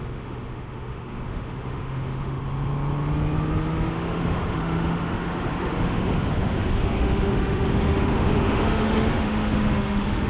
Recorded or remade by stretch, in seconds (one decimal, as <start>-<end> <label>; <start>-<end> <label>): 0.0-2.4 remade; 2.4-3.9 recorded; 3.9-10.3 remade